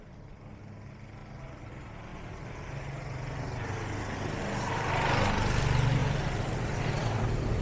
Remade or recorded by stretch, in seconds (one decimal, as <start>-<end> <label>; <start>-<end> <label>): 0.0-2.1 recorded; 2.1-4.9 remade; 4.9-6.0 recorded; 6.0-7.6 remade